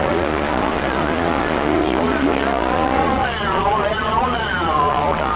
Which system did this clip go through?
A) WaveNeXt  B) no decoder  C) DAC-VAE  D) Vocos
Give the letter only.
D